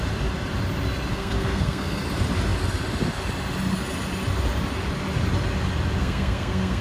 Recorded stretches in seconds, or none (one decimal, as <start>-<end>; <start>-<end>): 0.0-1.1; 2.0-6.0